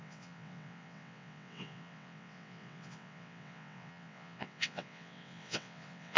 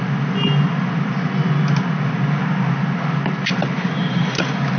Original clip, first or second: second